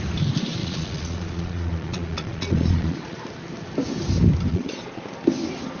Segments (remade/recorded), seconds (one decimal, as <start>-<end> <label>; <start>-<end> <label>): 0.0-0.6 recorded; 0.6-3.2 remade; 3.2-4.5 recorded; 4.5-5.1 remade; 5.1-5.8 recorded